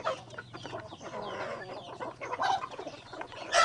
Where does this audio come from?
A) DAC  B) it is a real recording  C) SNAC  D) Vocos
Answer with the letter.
D